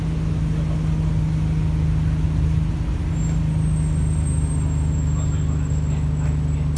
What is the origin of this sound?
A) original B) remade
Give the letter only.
A